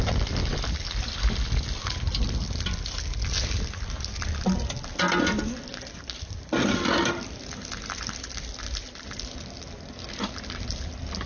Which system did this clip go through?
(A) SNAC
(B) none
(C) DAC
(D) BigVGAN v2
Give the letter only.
B